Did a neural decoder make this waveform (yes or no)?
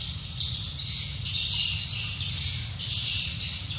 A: no